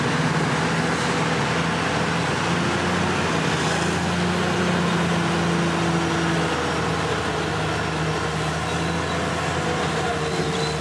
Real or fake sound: real